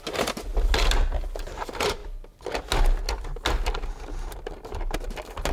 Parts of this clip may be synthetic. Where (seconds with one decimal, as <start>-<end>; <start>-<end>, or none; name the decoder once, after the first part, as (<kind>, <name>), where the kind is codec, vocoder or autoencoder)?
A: 0.0-0.5 (vocoder, BigVGAN v2); 1.4-2.0